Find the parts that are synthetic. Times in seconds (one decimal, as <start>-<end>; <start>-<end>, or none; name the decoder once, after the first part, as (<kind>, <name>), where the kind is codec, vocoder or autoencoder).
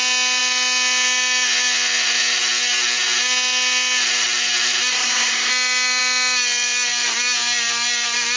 4.9-5.5 (codec, SNAC)